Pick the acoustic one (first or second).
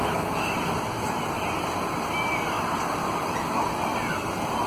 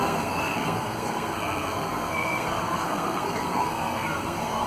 first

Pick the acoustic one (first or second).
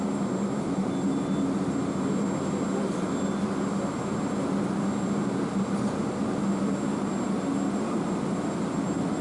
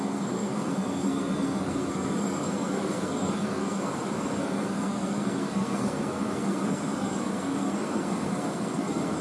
first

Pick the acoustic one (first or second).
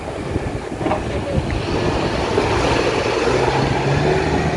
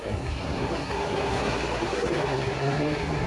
first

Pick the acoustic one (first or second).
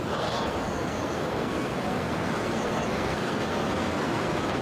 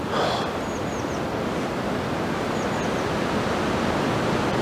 second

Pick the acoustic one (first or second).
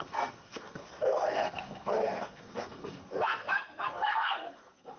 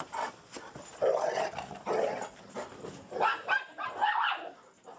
second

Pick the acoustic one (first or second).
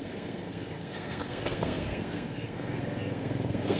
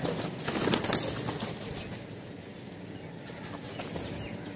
second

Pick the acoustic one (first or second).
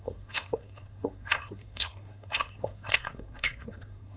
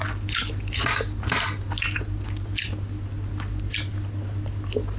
second